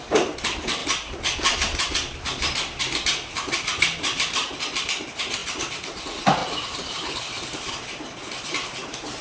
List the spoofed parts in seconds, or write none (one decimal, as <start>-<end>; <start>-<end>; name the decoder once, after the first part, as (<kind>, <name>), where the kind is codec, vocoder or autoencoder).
0.0-9.2 (vocoder, BigVGAN v2)